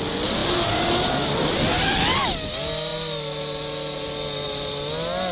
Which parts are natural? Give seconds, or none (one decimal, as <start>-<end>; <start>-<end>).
0.0-5.3